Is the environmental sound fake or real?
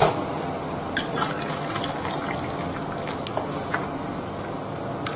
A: real